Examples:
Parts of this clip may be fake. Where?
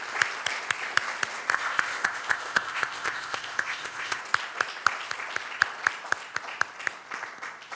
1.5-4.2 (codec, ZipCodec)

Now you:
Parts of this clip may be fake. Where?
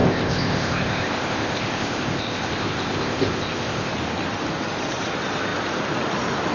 0.0-3.9 (codec, ZipCodec)